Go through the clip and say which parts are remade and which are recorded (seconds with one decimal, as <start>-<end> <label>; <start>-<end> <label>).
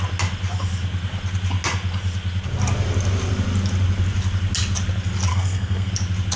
0.0-5.3 recorded; 5.3-5.9 remade; 5.9-6.4 recorded